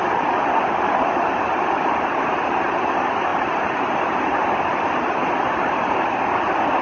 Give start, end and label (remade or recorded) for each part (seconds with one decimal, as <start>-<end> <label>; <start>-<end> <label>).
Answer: 0.0-6.8 recorded